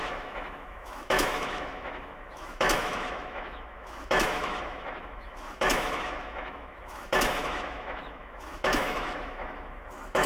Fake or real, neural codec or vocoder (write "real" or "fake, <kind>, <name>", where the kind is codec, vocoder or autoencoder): fake, autoencoder, DAC-VAE